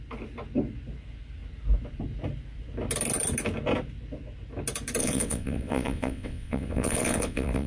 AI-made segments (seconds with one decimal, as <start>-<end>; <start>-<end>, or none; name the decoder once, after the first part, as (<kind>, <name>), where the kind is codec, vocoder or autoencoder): 5.0-7.7 (vocoder, WaveNeXt)